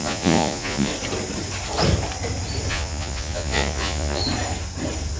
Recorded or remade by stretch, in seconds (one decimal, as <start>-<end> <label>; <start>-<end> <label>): 0.0-0.9 remade; 0.9-2.7 recorded; 2.7-4.2 remade; 4.2-5.2 recorded